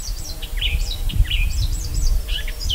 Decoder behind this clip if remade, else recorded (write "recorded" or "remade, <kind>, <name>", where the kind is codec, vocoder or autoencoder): remade, vocoder, BigVGAN v2